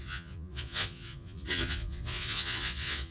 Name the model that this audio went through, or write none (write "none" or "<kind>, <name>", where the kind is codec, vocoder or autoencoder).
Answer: vocoder, Vocos